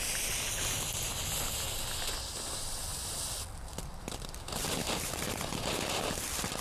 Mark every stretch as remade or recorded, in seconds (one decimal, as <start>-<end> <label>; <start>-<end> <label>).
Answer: 0.0-6.6 recorded